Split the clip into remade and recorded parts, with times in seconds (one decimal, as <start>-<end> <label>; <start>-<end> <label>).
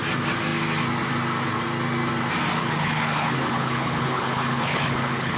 0.0-2.6 recorded; 2.6-5.4 remade